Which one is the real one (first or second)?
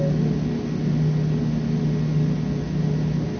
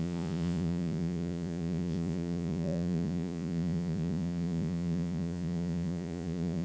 first